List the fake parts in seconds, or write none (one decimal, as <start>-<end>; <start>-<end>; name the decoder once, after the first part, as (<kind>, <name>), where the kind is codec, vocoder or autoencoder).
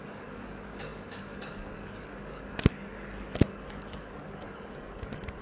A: 0.0-5.4 (codec, DAC)